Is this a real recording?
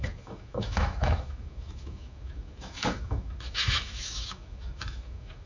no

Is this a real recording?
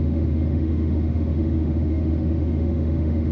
no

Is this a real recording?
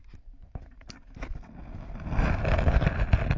yes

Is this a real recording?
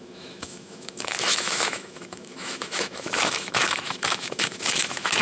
no